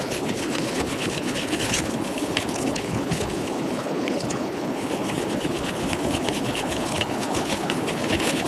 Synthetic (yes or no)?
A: yes